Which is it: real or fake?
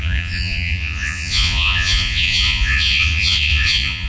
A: fake